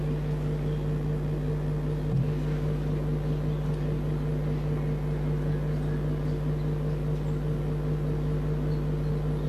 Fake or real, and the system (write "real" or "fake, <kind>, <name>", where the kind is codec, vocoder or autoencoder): real